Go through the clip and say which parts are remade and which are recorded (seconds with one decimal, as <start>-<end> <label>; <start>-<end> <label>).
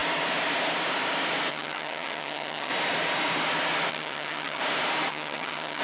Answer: 0.0-1.5 recorded; 1.5-2.7 remade; 2.7-3.9 recorded; 3.9-4.6 remade; 4.6-5.1 recorded; 5.1-5.8 remade